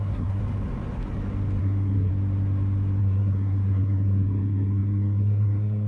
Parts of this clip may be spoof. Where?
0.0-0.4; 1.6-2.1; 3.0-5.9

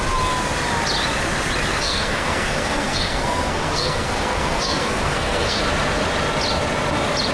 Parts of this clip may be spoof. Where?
1.7-5.6

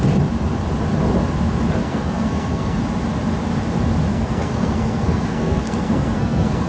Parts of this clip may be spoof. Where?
1.8-2.8; 4.1-6.7